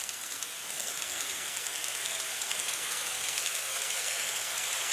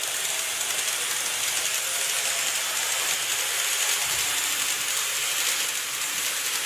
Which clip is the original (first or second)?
second